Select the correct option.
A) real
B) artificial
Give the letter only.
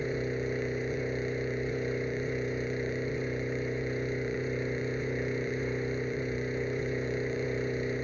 B